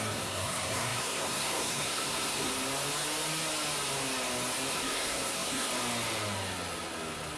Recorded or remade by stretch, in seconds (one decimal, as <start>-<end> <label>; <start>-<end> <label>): 0.0-2.5 remade; 2.5-4.7 recorded; 4.7-5.7 remade; 5.7-7.4 recorded